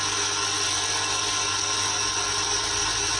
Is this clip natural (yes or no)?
yes